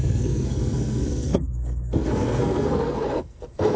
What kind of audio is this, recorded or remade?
remade